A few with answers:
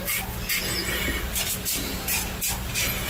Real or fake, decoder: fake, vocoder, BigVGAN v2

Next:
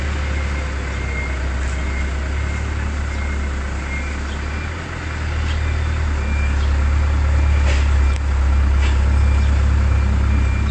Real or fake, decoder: real